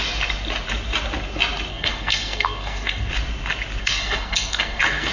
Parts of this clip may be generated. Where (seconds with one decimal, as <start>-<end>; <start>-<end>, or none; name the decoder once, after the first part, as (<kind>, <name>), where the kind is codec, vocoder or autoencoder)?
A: 1.7-3.1 (codec, SNAC); 3.8-5.1